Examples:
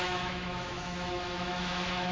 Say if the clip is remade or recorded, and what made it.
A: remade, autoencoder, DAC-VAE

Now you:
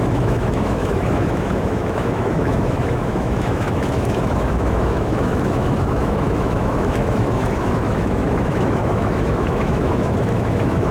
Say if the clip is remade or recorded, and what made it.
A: remade, autoencoder, DAC-VAE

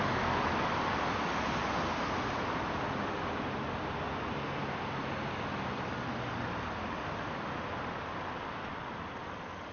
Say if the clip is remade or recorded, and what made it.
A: recorded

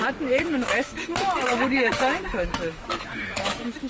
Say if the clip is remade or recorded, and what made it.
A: remade, autoencoder, DAC-VAE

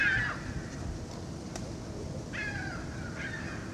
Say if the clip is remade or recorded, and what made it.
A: recorded